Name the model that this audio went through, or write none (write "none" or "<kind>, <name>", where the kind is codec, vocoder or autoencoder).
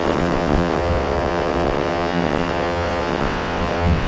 vocoder, WaveNeXt